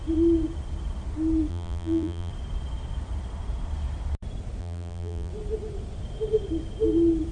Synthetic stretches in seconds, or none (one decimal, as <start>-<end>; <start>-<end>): 1.5-2.3; 4.6-5.3

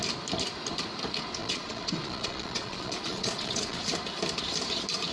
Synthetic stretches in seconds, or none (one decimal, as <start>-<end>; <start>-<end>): 1.4-3.8

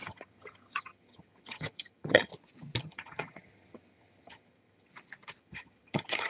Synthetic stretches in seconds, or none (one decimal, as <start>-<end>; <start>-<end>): 0.0-2.3; 2.8-4.9; 5.4-6.3